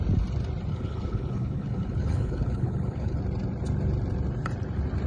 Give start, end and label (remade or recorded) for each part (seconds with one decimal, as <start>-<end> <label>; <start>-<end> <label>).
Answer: 0.0-0.7 recorded; 0.7-3.2 remade; 3.2-5.1 recorded